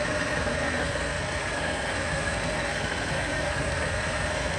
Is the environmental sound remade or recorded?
remade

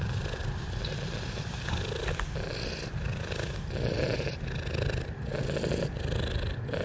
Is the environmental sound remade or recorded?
recorded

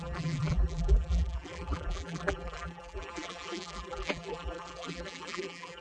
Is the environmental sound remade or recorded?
remade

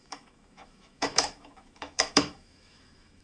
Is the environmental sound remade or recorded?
remade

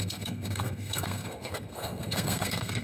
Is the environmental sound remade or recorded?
remade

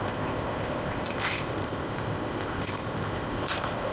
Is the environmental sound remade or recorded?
remade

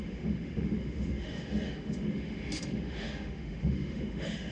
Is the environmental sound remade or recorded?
remade